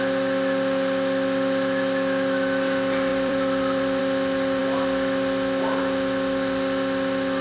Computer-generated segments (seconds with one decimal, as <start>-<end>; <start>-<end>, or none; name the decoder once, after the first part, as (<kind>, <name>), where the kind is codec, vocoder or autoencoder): 3.1-4.0 (vocoder, BigVGAN v2)